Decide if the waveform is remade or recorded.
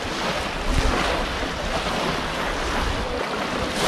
recorded